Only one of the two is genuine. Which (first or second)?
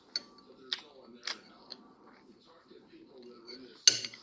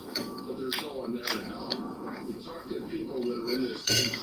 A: first